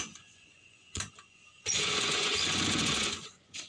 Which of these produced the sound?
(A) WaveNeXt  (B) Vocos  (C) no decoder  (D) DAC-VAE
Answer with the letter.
B